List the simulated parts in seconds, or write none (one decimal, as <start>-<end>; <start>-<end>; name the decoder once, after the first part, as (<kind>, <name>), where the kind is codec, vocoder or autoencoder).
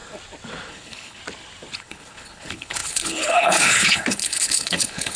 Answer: 0.7-1.2 (codec, HILCodec); 1.8-5.2